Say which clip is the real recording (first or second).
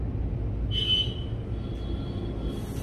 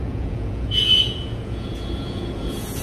first